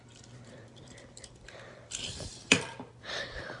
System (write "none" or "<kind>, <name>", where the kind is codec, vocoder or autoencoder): vocoder, BigVGAN v2